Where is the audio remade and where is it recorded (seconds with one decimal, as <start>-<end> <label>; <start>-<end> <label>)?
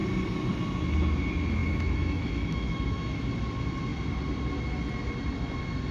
0.0-1.6 recorded; 1.6-3.3 remade; 3.3-5.9 recorded